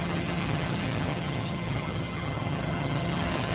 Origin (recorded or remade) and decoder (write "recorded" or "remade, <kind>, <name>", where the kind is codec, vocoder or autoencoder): remade, vocoder, HiFi-GAN